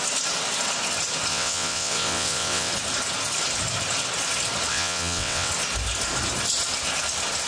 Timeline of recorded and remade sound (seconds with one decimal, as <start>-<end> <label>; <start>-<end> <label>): 0.0-1.3 recorded; 1.3-2.7 remade; 2.7-4.7 recorded; 4.7-5.5 remade; 5.5-7.5 recorded